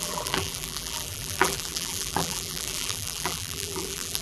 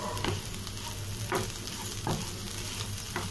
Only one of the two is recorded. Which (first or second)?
second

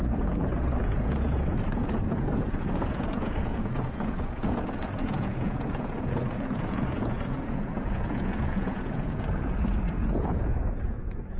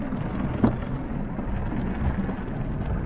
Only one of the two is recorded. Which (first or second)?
second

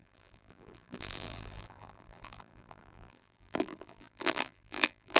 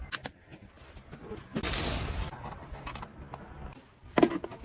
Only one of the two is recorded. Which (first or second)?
second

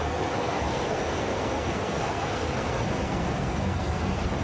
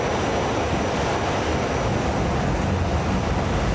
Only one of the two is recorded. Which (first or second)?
second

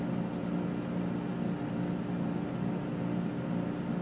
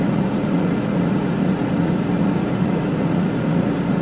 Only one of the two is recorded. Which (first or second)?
first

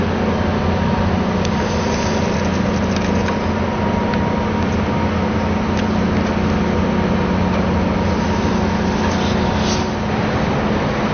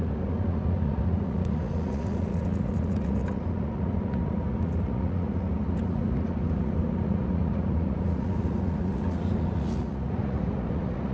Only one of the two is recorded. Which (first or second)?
first